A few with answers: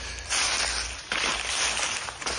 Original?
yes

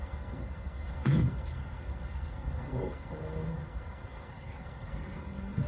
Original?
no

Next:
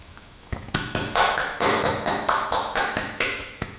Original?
no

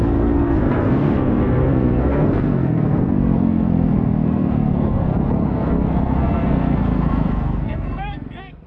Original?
no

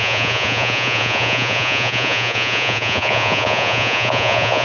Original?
no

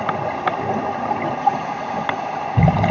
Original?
yes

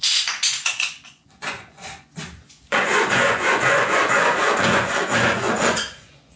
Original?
no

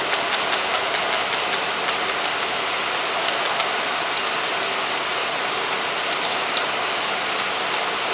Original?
yes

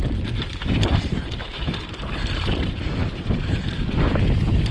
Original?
no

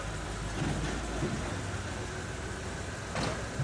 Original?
yes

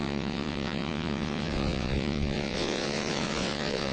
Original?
no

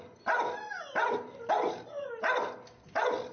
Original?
yes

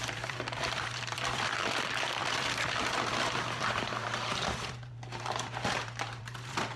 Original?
no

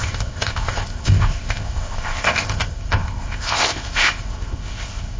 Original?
no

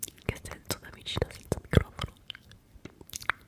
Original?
no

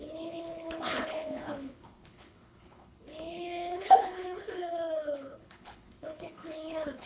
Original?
no